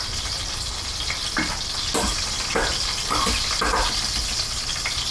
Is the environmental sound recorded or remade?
recorded